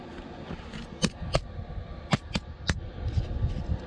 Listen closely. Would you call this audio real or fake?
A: real